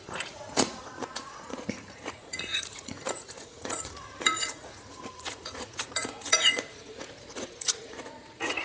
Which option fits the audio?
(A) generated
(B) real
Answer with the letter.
A